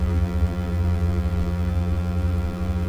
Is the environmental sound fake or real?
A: fake